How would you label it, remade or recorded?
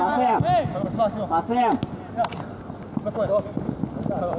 recorded